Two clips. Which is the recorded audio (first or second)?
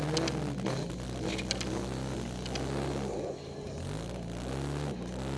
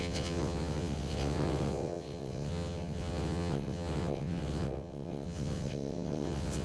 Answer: first